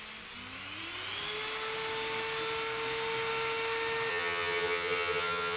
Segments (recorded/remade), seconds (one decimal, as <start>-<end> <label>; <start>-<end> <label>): 0.0-4.1 recorded; 4.1-5.6 remade